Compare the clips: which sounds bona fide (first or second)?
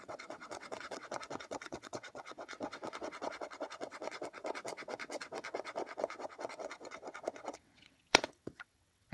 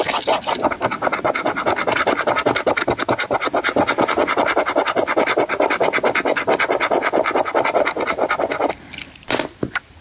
second